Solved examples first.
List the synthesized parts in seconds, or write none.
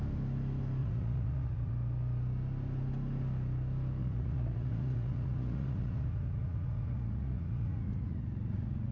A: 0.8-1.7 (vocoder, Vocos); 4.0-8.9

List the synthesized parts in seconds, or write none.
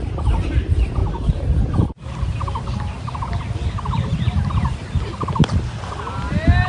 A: none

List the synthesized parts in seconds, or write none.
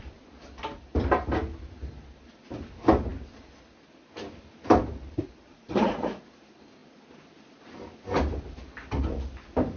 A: 5.5-6.2 (vocoder, Vocos)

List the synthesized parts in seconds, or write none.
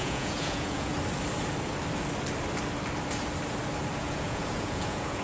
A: 0.0-0.9 (vocoder, Vocos); 4.0-5.2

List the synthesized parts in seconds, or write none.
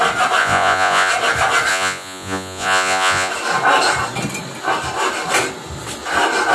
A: 0.4-1.1 (vocoder, Vocos); 1.7-3.3